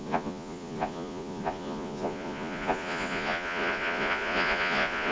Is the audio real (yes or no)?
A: no